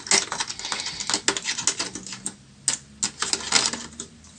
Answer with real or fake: real